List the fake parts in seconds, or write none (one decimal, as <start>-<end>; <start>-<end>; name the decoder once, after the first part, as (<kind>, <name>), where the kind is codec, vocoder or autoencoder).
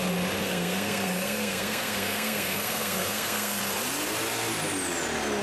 0.4-3.6 (codec, SNAC)